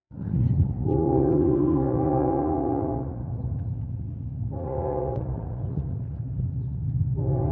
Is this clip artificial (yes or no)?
yes